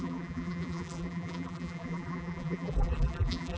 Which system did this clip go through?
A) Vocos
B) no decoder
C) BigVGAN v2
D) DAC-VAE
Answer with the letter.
C